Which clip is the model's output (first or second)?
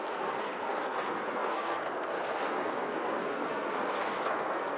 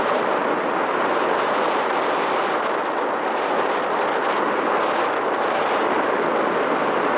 first